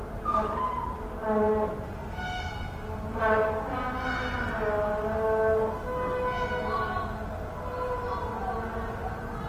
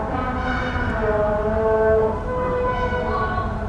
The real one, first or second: first